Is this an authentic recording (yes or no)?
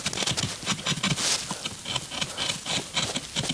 yes